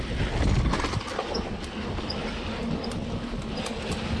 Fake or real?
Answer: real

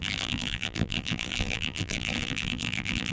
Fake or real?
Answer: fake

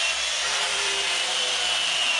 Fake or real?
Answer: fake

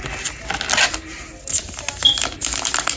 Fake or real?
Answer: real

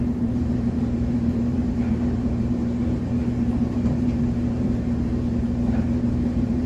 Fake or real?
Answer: fake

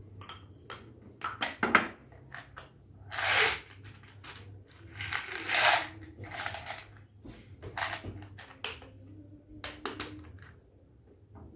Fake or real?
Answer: real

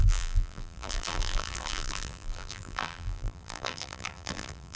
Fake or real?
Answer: fake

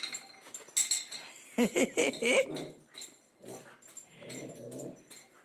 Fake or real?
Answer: real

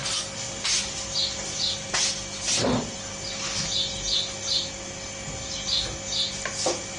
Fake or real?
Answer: real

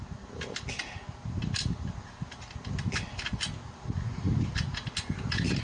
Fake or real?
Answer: real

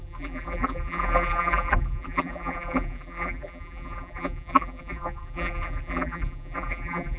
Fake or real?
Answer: fake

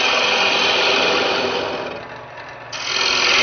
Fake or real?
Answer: real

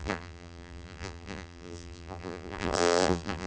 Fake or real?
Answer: fake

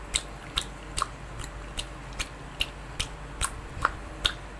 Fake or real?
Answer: real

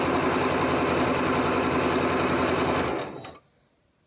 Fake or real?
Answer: real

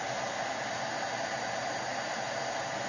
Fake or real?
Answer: real